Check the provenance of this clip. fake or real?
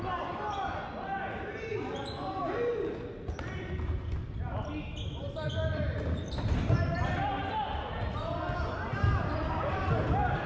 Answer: fake